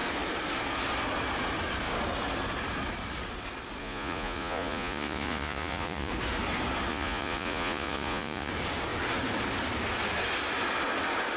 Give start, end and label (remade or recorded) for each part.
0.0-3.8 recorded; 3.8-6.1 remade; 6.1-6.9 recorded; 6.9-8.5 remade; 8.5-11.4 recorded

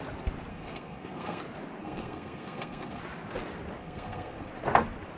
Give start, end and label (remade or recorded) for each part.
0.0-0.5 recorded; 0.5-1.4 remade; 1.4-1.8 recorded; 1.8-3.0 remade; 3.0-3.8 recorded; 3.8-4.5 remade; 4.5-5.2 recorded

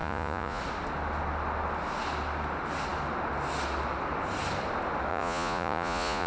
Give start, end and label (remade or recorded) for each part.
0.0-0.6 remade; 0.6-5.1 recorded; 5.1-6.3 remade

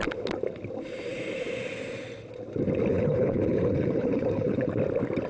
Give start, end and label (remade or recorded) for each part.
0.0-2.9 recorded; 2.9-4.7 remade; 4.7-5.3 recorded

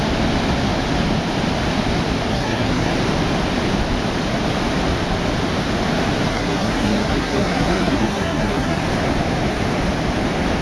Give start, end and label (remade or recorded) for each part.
0.0-2.3 recorded; 2.3-2.9 remade; 2.9-6.3 recorded; 6.3-8.8 remade; 8.8-10.6 recorded

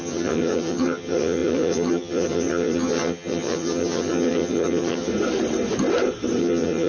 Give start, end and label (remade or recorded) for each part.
0.0-5.1 remade; 5.1-6.4 recorded; 6.4-6.9 remade

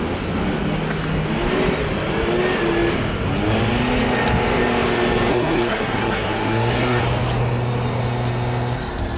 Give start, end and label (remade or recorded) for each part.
0.0-5.3 recorded; 5.3-7.0 remade; 7.0-9.2 recorded

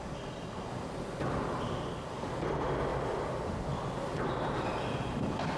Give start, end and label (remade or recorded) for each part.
0.0-5.6 recorded